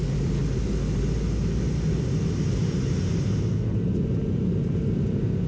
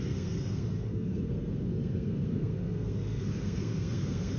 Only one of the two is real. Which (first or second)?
first